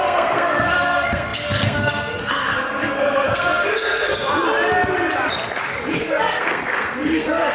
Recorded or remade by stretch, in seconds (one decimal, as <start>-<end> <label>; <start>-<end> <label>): 0.0-4.1 remade; 4.1-5.9 recorded; 5.9-7.5 remade